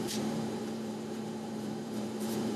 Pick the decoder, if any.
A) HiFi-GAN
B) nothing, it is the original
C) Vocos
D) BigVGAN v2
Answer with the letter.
D